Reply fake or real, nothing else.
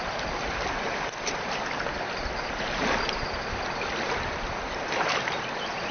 real